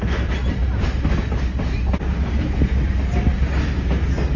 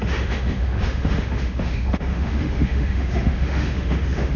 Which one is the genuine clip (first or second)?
first